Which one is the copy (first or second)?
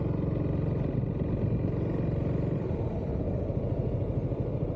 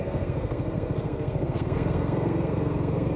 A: second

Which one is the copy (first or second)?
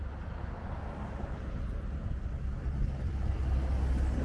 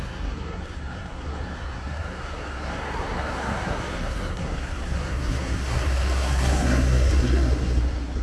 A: second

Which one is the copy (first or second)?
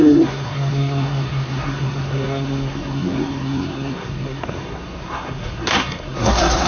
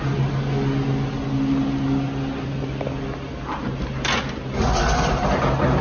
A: first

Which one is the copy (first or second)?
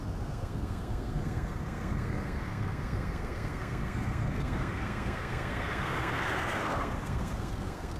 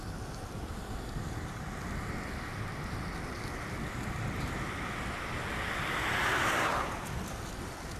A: first